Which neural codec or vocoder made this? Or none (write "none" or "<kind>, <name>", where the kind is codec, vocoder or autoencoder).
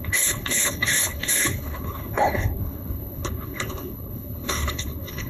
codec, HILCodec